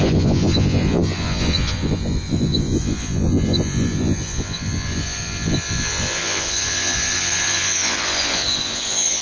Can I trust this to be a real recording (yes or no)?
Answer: no